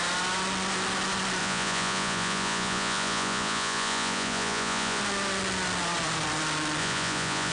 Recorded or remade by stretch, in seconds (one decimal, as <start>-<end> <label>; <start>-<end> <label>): 0.0-1.4 recorded; 1.4-5.0 remade; 5.0-6.8 recorded; 6.8-7.5 remade